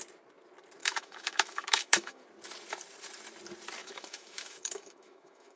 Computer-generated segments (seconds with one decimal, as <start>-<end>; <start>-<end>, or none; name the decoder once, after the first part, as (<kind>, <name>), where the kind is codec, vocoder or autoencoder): 0.8-2.2 (autoencoder, DAC-VAE); 3.8-5.6